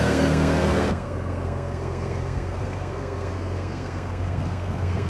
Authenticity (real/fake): fake